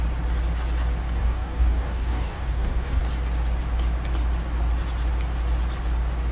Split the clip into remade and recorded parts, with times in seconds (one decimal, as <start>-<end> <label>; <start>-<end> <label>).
0.0-1.2 recorded; 1.2-3.0 remade; 3.0-6.3 recorded